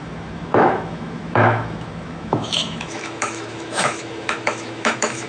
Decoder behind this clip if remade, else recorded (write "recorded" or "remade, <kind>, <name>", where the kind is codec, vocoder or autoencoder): remade, autoencoder, DAC-VAE